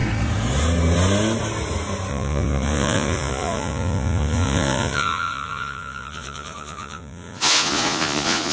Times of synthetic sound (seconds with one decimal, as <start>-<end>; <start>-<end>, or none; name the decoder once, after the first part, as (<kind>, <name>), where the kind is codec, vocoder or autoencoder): 2.1-8.5 (vocoder, Vocos)